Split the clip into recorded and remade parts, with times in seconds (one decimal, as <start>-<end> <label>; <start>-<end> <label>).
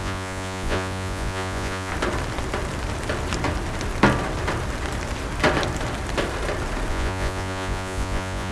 0.0-1.9 remade; 1.9-6.9 recorded; 6.9-8.5 remade